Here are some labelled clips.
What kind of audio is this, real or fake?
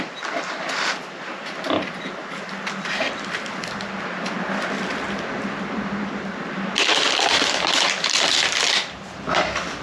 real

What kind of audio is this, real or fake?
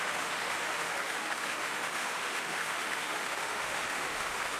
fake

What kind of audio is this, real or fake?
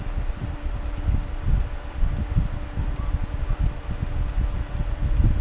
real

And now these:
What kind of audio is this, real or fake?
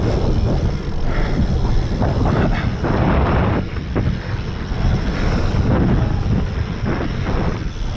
real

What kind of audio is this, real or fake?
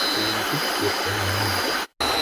real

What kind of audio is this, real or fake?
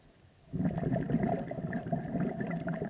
real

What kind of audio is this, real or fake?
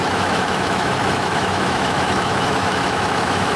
fake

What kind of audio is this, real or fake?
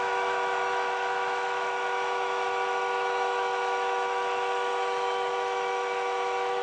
fake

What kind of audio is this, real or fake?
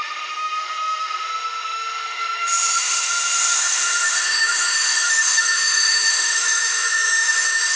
fake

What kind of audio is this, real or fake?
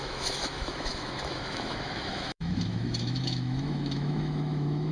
fake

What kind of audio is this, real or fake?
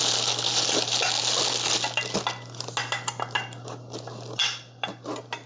real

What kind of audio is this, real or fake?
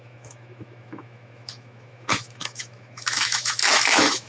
fake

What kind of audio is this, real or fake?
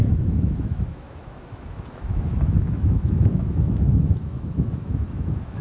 fake